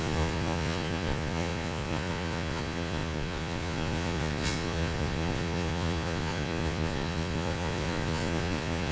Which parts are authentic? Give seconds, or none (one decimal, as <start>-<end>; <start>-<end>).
none